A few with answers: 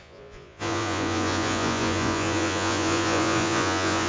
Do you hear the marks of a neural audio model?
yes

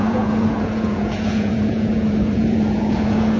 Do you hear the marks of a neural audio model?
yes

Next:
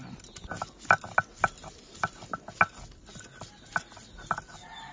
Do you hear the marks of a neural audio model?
no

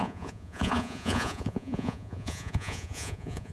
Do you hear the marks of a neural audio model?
yes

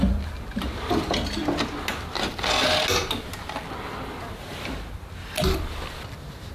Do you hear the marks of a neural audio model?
no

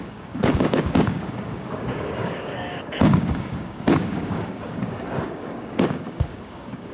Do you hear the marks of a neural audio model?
yes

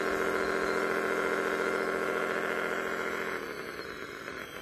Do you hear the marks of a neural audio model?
no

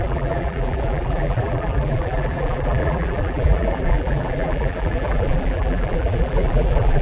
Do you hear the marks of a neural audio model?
yes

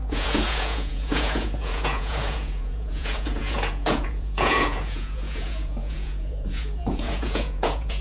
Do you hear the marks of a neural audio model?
yes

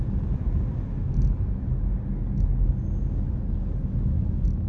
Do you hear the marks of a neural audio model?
no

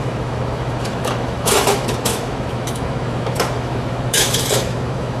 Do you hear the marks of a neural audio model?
yes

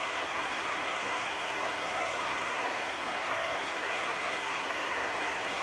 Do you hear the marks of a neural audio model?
yes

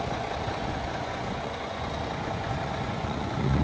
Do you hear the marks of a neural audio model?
yes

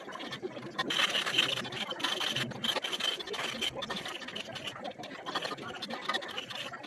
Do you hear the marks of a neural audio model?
no